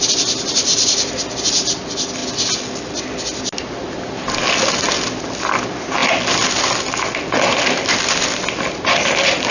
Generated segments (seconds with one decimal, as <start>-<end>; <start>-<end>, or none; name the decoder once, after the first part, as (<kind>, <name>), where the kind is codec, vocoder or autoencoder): none